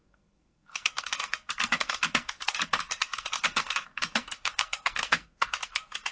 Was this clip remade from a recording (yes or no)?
yes